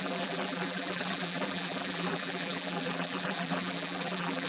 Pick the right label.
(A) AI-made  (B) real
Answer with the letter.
A